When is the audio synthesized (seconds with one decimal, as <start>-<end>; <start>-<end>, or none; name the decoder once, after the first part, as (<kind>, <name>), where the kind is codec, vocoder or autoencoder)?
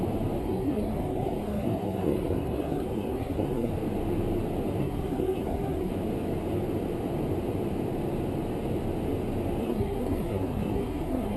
0.4-3.7 (codec, SNAC); 4.8-5.9; 9.6-11.4